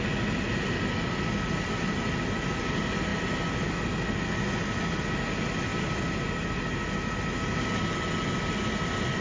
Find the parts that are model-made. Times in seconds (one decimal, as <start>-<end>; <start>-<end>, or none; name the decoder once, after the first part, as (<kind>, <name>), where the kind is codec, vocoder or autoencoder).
none